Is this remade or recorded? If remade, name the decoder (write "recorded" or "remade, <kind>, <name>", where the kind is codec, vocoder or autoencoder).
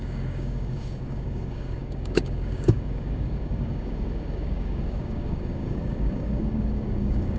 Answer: remade, codec, DAC